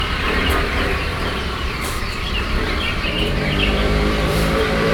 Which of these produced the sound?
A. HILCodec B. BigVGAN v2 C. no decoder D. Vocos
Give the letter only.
B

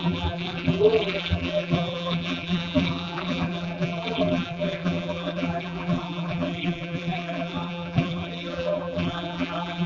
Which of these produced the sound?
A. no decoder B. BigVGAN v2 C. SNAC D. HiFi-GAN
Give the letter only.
B